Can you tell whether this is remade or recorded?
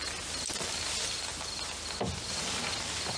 recorded